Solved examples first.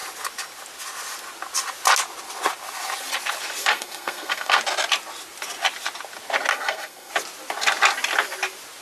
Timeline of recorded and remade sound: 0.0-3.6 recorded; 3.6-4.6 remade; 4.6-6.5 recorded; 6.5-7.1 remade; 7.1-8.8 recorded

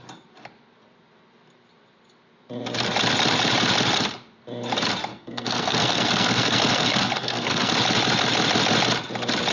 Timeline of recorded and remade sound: 0.0-5.1 recorded; 5.1-7.7 remade; 7.7-9.5 recorded

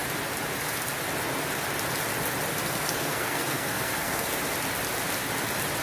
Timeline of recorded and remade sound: 0.0-2.6 recorded; 2.6-4.4 remade; 4.4-5.8 recorded